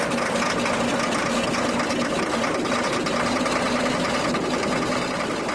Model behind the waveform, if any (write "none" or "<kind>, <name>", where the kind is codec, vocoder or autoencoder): none